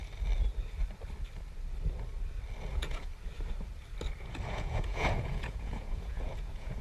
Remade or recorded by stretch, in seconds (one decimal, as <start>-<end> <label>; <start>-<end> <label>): 0.0-2.7 recorded; 2.7-3.1 remade; 3.1-4.2 recorded; 4.2-6.8 remade